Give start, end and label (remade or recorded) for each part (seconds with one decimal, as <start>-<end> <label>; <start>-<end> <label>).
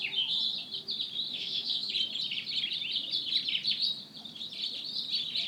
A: 0.0-1.3 recorded; 1.3-1.9 remade; 1.9-5.5 recorded